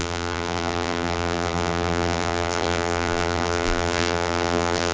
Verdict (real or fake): fake